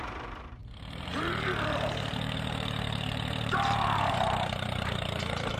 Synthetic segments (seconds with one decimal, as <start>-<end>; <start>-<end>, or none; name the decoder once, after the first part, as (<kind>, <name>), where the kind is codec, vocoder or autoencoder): 0.0-5.6 (vocoder, BigVGAN v2)